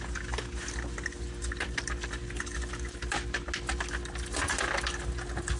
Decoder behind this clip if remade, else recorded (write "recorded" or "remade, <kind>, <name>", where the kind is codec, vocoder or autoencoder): recorded